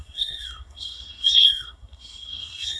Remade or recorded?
remade